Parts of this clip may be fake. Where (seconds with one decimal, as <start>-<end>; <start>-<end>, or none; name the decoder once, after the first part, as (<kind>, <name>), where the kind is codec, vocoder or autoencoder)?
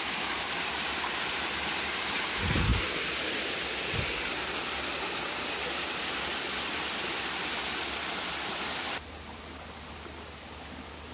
none